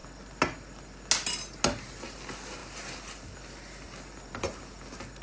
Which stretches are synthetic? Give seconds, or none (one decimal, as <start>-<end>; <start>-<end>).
none